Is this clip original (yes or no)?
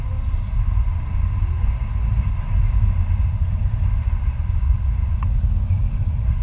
yes